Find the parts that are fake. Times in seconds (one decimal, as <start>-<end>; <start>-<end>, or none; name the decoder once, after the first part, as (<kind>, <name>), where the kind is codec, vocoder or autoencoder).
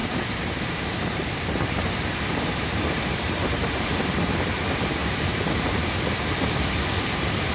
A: 0.0-4.4 (vocoder, BigVGAN v2); 5.0-5.9